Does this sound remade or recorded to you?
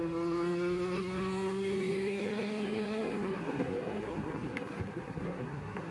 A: remade